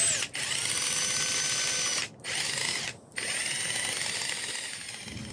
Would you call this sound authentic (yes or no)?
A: yes